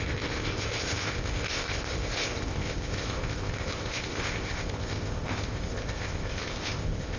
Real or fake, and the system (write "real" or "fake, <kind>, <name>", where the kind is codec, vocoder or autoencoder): fake, codec, ZipCodec